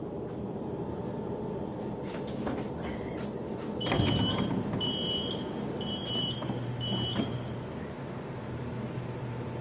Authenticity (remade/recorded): remade